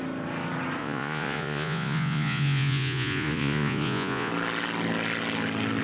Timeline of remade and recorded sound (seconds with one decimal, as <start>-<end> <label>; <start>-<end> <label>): 0.0-0.8 recorded; 0.8-4.3 remade; 4.3-5.8 recorded